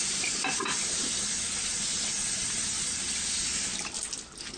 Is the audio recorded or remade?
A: recorded